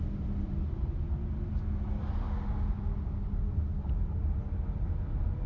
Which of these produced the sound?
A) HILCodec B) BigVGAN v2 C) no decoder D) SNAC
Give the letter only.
C